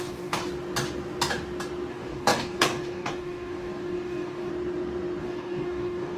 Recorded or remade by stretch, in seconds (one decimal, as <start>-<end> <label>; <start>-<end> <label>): 0.0-0.4 remade; 0.4-1.9 recorded; 1.9-4.5 remade; 4.5-5.2 recorded; 5.2-6.2 remade